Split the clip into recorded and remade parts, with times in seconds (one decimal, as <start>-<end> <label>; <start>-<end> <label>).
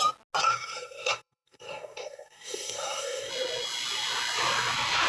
0.0-0.4 recorded; 0.4-3.3 remade; 3.3-5.1 recorded